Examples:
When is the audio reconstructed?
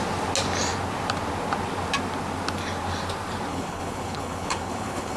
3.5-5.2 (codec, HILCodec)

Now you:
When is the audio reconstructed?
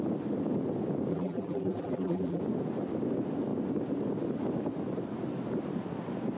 1.1-2.4 (vocoder, BigVGAN v2)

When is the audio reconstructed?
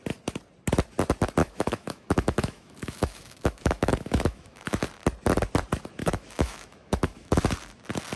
1.4-4.8 (autoencoder, DAC-VAE); 6.0-7.3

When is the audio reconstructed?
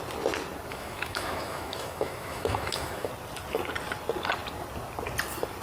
0.7-3.1 (autoencoder, DAC-VAE)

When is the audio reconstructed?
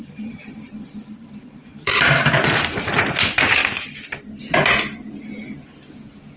0.0-2.9 (vocoder, BigVGAN v2)